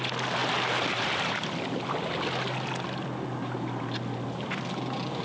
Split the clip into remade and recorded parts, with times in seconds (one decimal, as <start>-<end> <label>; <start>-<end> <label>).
0.0-5.2 recorded